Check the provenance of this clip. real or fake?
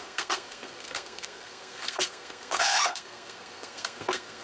fake